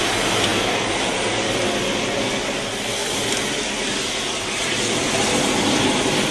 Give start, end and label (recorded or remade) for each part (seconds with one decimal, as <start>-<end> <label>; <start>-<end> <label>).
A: 0.0-6.3 recorded